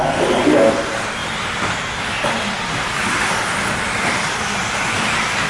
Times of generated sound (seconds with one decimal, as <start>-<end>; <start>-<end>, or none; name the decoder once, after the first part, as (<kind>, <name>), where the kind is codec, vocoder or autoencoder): none